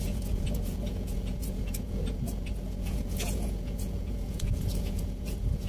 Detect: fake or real fake